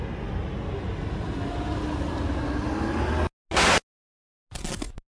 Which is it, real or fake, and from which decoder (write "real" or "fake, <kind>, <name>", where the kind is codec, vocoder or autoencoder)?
real